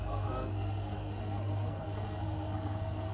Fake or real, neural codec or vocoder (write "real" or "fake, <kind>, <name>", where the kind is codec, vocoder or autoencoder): fake, codec, SNAC